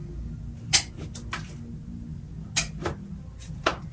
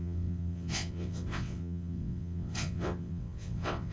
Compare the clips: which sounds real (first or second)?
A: first